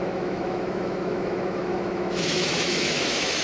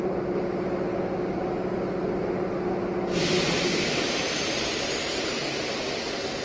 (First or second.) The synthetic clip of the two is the first